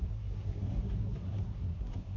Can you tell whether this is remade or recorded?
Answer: remade